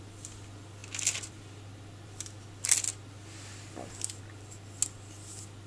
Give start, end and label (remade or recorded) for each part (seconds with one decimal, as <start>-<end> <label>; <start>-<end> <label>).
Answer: 0.0-5.7 recorded